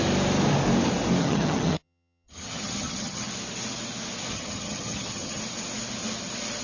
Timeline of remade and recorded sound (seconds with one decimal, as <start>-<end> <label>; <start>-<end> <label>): 0.0-1.2 recorded; 1.2-3.3 remade; 3.3-4.3 recorded; 4.3-5.4 remade; 5.4-6.6 recorded